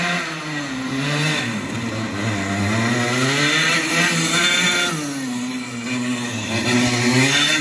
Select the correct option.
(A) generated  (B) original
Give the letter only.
B